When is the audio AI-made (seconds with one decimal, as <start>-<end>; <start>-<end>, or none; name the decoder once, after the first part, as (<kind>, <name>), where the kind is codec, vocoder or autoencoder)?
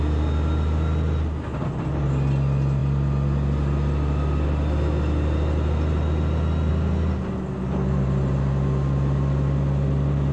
none